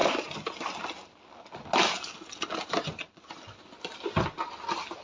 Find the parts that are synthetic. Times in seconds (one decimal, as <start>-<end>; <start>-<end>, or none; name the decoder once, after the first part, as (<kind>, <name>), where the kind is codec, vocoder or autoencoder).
none